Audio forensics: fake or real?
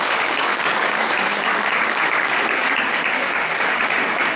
fake